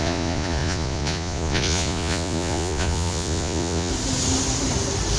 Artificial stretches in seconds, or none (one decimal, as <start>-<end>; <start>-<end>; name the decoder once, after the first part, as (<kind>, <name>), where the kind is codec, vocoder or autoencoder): 0.0-3.9 (vocoder, Vocos)